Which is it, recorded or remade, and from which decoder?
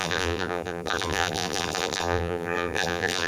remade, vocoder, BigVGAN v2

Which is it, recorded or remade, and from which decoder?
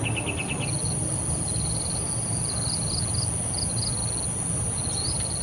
recorded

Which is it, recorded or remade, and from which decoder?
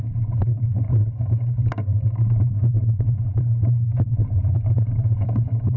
remade, vocoder, BigVGAN v2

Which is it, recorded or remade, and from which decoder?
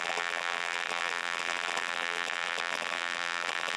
remade, vocoder, BigVGAN v2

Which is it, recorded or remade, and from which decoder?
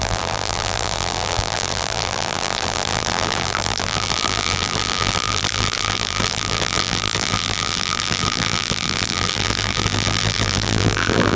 remade, vocoder, BigVGAN v2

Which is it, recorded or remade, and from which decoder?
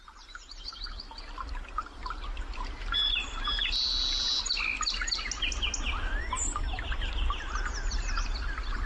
recorded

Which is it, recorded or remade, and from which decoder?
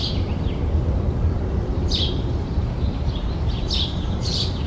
remade, vocoder, BigVGAN v2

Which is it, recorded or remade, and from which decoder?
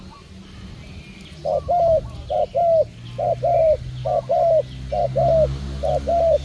recorded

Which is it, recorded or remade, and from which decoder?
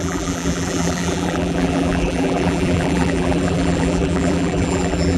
remade, vocoder, BigVGAN v2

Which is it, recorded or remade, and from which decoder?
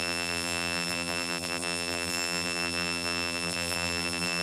remade, vocoder, BigVGAN v2